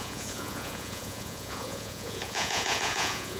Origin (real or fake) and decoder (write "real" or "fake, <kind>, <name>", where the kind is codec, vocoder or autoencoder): fake, vocoder, Vocos